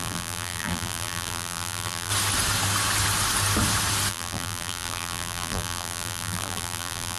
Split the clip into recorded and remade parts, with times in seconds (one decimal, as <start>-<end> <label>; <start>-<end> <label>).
0.0-2.1 remade; 2.1-4.1 recorded; 4.1-7.2 remade